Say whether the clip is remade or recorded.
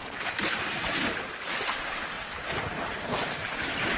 remade